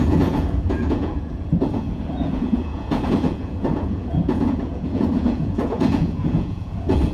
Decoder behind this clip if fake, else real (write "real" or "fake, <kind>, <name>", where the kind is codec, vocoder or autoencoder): fake, vocoder, Vocos